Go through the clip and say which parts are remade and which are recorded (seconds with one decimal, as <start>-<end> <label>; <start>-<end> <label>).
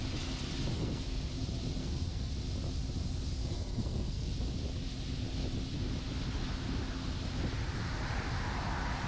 0.0-0.7 recorded; 0.7-1.3 remade; 1.3-1.8 recorded; 1.8-2.3 remade; 2.3-3.4 recorded; 3.4-4.3 remade; 4.3-9.1 recorded